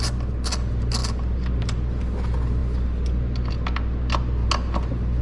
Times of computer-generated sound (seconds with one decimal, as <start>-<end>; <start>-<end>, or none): none